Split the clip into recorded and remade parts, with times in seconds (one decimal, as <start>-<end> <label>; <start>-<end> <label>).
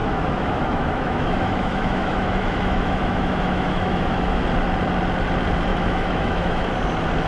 0.0-4.4 remade; 4.4-5.7 recorded; 5.7-6.7 remade; 6.7-7.3 recorded